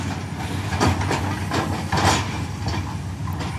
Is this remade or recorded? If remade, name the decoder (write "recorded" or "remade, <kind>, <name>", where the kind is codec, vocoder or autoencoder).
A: recorded